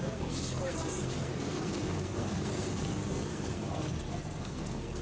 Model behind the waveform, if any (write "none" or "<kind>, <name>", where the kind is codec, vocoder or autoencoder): codec, SNAC